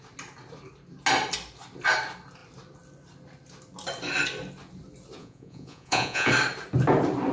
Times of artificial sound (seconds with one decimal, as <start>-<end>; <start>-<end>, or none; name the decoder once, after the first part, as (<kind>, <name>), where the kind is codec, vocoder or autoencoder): 5.2-6.3 (vocoder, Vocos)